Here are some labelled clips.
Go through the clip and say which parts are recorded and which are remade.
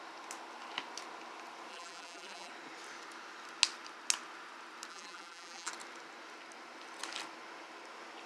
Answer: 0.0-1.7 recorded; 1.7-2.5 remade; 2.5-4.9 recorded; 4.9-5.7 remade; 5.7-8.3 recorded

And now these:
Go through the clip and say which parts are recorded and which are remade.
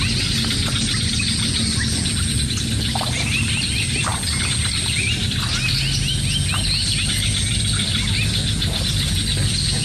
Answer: 0.0-9.8 recorded